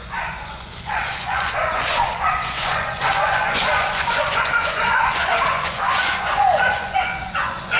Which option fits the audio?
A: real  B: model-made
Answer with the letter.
B